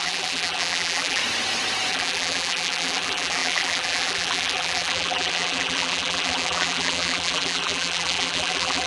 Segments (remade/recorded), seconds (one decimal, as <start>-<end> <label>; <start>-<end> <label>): 0.0-1.2 remade; 1.2-1.9 recorded; 1.9-8.9 remade